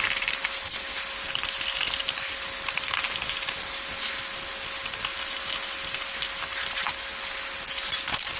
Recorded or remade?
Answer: recorded